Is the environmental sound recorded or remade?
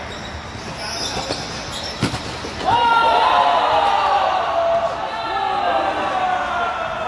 recorded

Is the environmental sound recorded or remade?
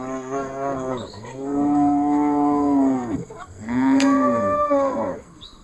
remade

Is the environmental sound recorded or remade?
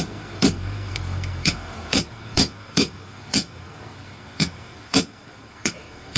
remade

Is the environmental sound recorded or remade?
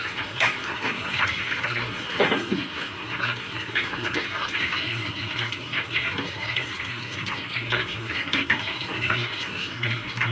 remade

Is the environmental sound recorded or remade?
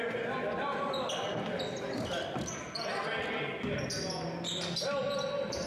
recorded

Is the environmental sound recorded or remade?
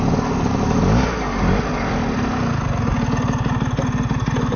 recorded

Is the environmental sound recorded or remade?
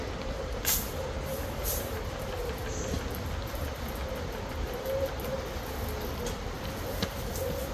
recorded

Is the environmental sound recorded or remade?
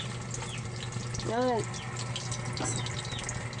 recorded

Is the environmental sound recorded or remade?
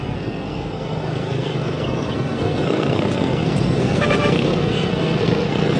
remade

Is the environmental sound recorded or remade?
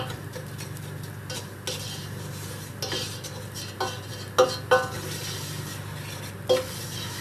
recorded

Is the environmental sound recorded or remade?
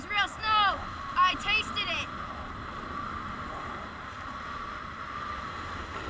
recorded